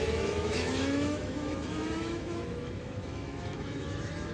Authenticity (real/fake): fake